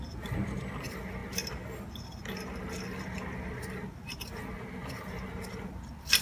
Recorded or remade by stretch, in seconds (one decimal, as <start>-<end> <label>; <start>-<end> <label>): 0.0-6.2 recorded

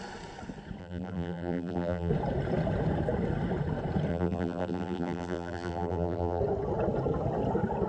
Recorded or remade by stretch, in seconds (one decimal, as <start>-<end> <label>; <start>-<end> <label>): 0.0-0.8 recorded; 0.8-2.1 remade; 2.1-4.1 recorded; 4.1-6.4 remade; 6.4-7.9 recorded

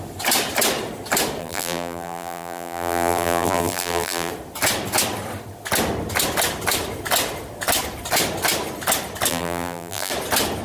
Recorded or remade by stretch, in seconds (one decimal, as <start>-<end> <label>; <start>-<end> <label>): 0.0-1.4 recorded; 1.4-4.3 remade; 4.3-9.3 recorded; 9.3-10.1 remade; 10.1-10.6 recorded

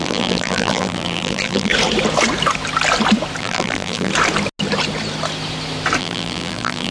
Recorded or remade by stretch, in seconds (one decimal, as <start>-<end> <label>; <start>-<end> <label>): 0.0-1.7 remade; 1.7-3.4 recorded; 3.4-4.1 remade; 4.1-6.0 recorded; 6.0-6.9 remade

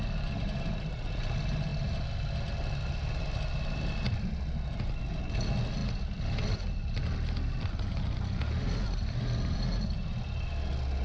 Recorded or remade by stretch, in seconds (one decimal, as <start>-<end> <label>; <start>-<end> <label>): 0.0-11.0 recorded